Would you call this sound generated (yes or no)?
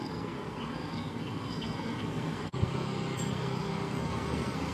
yes